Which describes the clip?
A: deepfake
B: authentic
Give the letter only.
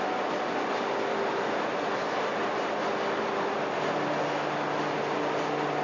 B